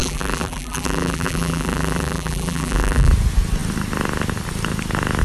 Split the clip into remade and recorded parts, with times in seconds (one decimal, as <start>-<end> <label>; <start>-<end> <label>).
0.0-3.1 remade; 3.1-5.2 recorded